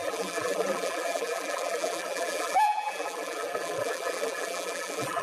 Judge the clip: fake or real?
fake